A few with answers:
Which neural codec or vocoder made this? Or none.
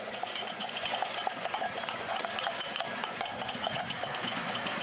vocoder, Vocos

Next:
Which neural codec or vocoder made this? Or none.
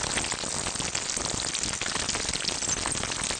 none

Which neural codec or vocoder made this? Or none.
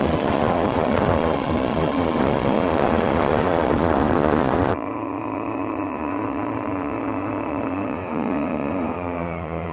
vocoder, Vocos